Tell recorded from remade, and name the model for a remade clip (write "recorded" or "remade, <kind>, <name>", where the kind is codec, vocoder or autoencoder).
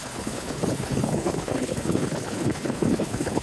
remade, codec, HILCodec